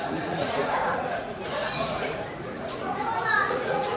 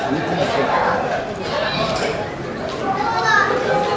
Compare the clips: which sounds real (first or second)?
second